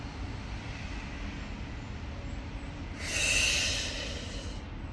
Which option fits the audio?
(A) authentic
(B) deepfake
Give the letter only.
A